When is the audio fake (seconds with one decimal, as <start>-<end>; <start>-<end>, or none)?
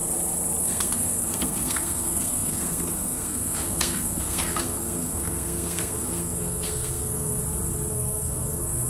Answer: 0.6-7.4; 7.9-8.9